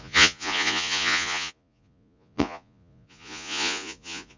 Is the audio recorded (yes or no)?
no